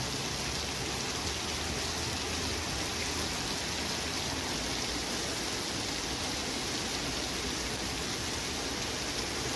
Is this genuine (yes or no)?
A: yes